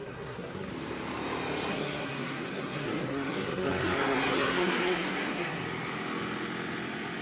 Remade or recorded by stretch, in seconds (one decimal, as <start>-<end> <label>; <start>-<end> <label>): 0.0-0.7 remade; 0.7-1.7 recorded; 1.7-5.6 remade; 5.6-7.2 recorded